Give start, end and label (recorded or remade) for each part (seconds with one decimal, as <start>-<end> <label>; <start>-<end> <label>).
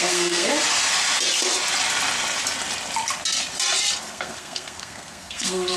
0.0-0.5 remade; 0.5-4.0 recorded; 4.0-5.8 remade